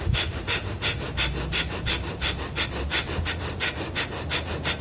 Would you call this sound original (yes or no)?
yes